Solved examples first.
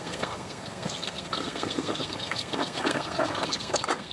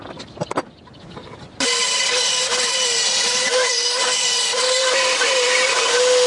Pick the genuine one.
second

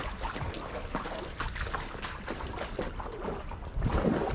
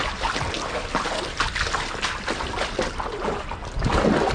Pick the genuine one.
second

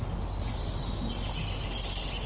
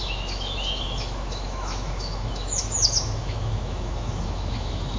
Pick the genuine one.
first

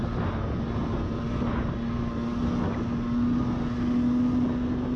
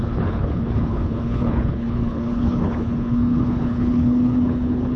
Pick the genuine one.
first